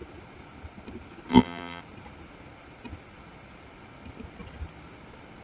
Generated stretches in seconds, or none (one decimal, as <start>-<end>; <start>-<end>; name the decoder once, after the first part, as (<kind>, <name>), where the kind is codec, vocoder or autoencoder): 1.3-1.8 (vocoder, BigVGAN v2)